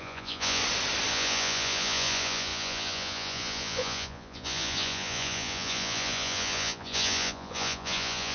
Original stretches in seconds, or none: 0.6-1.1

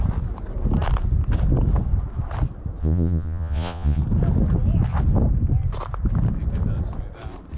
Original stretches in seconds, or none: 0.0-2.8; 4.0-7.6

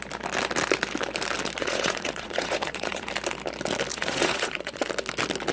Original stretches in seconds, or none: 0.0-1.6; 3.1-3.9; 4.9-5.5

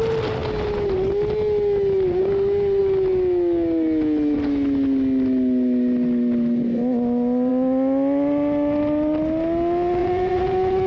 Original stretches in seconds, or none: 0.0-10.0